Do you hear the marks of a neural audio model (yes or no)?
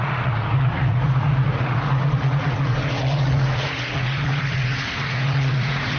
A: yes